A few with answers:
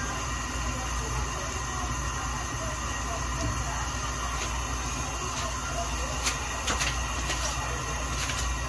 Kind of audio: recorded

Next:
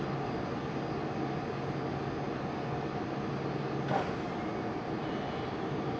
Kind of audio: recorded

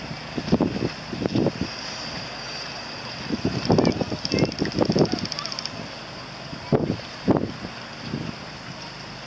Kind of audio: recorded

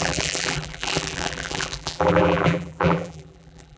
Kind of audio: remade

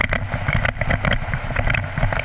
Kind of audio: recorded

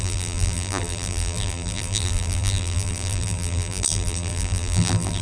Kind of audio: remade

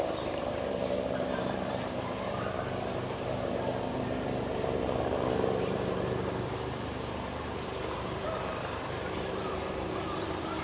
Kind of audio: remade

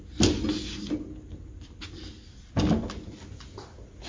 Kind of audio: recorded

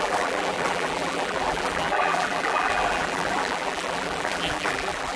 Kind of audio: remade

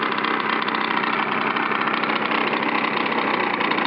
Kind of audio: recorded